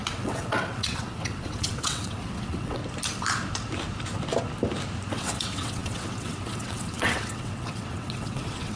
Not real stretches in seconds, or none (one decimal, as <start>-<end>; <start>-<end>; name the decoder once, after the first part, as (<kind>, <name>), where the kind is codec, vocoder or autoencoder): 0.0-2.8 (vocoder, WaveNeXt); 5.1-8.8